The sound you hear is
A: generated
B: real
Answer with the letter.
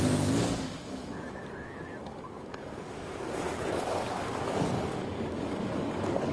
A